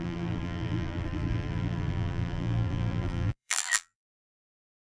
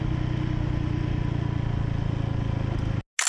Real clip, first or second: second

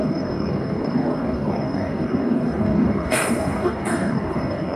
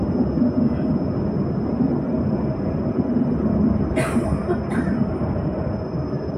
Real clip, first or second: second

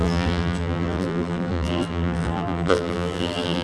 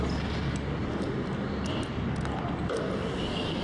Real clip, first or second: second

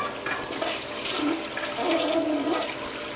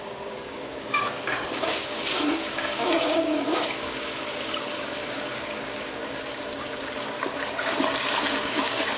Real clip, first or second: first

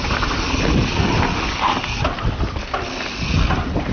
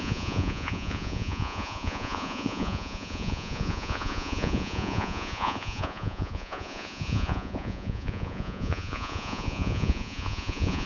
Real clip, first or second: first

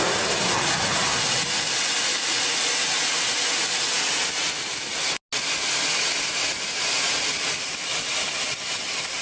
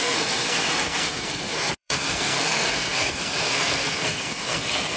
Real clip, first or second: first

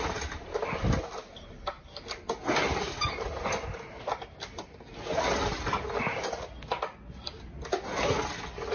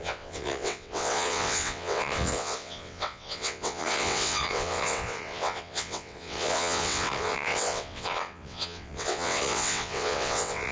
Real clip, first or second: first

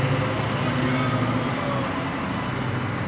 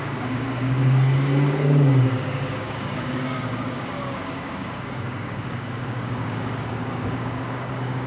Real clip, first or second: first